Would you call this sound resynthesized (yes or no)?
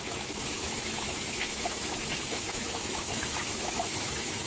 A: yes